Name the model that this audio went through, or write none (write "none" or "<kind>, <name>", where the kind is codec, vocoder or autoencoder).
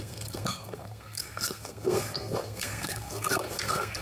codec, SNAC